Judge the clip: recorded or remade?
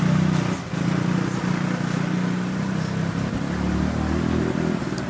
recorded